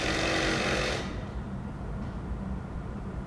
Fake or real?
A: real